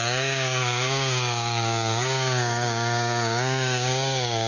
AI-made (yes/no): yes